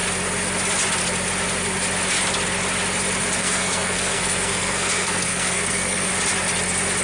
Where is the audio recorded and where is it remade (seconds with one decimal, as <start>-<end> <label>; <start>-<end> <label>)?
0.0-3.4 recorded; 3.4-6.1 remade; 6.1-7.0 recorded